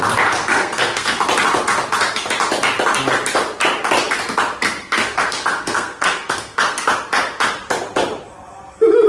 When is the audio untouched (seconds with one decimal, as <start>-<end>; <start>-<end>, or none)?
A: 0.0-0.4; 1.2-4.8; 6.9-9.1